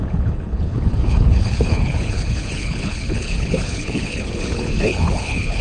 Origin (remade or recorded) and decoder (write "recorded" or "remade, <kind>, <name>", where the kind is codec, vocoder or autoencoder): remade, codec, HILCodec